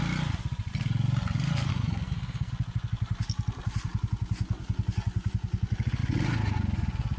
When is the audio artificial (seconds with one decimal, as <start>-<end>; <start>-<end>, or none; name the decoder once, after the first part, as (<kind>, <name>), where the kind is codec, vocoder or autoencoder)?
1.7-2.5 (codec, SNAC)